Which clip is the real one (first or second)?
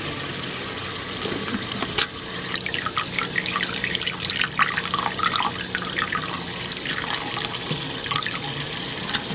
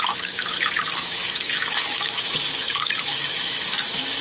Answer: first